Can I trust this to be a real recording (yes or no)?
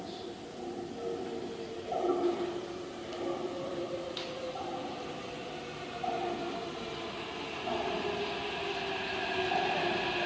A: yes